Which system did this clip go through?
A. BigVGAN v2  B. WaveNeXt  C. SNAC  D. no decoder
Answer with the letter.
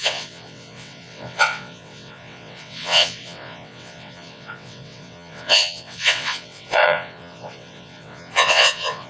B